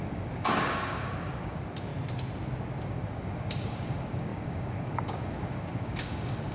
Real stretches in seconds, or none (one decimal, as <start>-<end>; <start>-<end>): 1.9-2.8